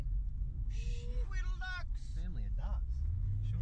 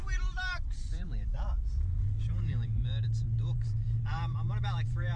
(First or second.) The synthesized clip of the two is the second